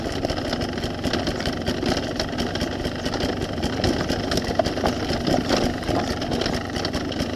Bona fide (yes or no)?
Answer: yes